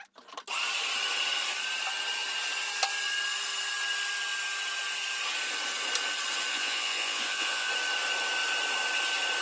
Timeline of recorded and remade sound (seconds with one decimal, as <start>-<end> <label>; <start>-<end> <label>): 0.0-6.5 recorded; 6.5-7.7 remade; 7.7-9.4 recorded